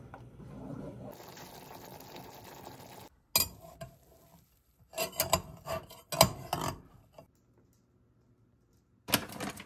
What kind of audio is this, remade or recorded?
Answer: recorded